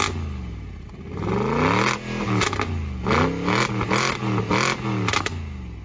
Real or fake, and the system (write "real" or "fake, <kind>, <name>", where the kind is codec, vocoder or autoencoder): real